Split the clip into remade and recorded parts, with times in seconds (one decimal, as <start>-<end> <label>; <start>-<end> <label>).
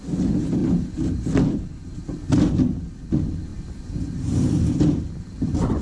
0.0-3.5 recorded; 3.5-5.0 remade; 5.0-5.8 recorded